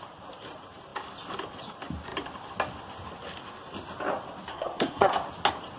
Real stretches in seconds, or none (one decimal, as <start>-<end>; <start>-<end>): 0.0-4.5; 5.1-5.8